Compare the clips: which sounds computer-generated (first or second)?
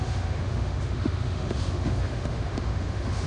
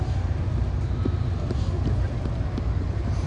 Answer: first